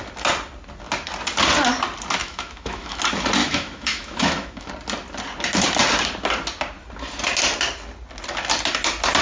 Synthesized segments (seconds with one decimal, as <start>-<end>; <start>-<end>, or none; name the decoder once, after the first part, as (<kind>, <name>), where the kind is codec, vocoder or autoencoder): 2.2-3.0 (autoencoder, DAC-VAE); 3.4-4.7